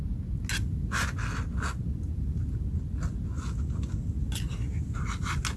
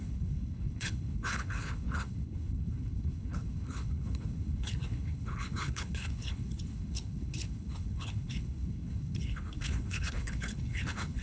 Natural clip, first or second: first